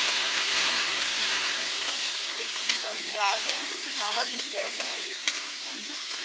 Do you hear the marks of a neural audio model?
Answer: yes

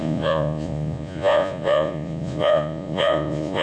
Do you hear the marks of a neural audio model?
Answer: yes